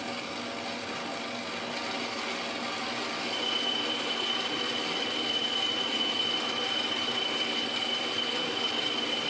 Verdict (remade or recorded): recorded